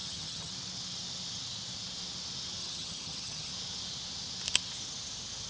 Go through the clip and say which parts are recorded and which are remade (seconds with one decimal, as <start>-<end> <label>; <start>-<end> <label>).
0.0-0.5 remade; 0.5-2.6 recorded; 2.6-3.5 remade; 3.5-5.5 recorded